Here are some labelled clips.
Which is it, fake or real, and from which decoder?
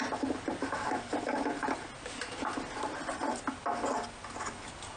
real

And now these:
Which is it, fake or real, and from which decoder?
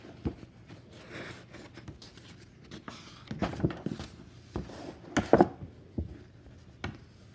real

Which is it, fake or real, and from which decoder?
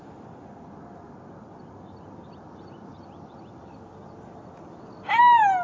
real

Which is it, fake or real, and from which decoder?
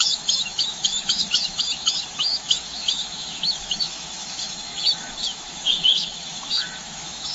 fake, autoencoder, DAC-VAE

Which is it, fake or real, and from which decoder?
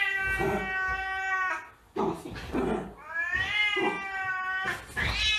real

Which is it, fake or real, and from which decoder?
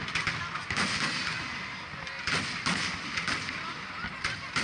real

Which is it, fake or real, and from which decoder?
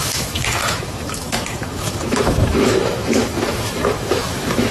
fake, autoencoder, DAC-VAE